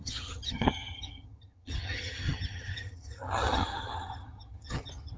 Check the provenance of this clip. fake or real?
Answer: fake